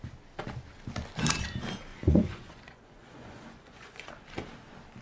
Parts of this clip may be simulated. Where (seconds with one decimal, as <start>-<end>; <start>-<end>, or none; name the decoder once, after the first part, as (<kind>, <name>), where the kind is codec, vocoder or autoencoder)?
1.9-4.1 (vocoder, Vocos)